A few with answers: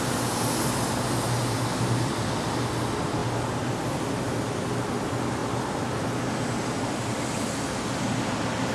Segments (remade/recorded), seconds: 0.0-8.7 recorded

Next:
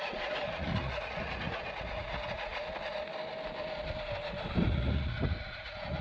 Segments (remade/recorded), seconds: 0.0-2.5 remade; 2.5-4.6 recorded; 4.6-6.0 remade

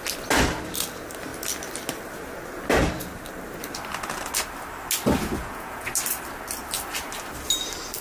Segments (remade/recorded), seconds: 0.0-5.4 recorded; 5.4-5.9 remade; 5.9-8.0 recorded

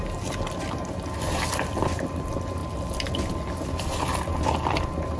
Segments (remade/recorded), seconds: 0.0-5.2 recorded

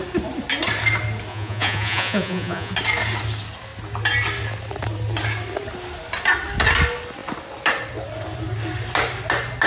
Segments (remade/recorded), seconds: 0.0-1.3 recorded; 1.3-2.7 remade; 2.7-9.7 recorded

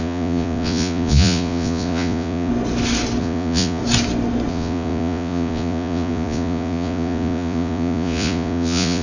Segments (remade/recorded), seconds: 0.0-2.5 remade; 2.5-3.2 recorded; 3.2-3.8 remade; 3.8-4.5 recorded; 4.5-9.0 remade

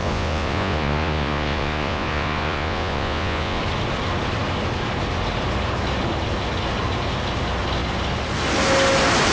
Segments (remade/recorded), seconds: 0.0-3.6 remade; 3.6-9.3 recorded

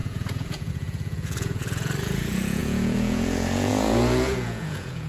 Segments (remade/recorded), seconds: 0.0-5.1 remade